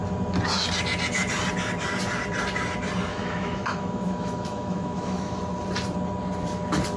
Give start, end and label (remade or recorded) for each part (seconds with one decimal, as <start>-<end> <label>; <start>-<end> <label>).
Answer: 0.0-3.1 recorded; 3.1-5.4 remade; 5.4-7.0 recorded